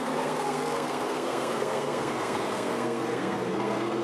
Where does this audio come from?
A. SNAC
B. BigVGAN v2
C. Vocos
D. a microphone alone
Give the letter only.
A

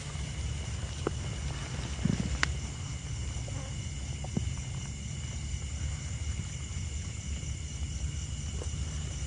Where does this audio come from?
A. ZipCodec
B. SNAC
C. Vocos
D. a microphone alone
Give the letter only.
D